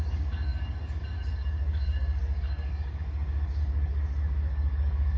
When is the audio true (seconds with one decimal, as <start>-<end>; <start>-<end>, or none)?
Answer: none